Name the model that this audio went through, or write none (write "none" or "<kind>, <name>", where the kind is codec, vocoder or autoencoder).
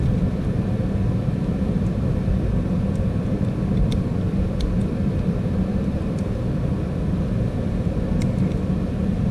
vocoder, BigVGAN v2